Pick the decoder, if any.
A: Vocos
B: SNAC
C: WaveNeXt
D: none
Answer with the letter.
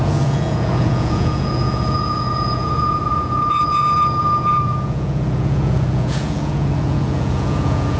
A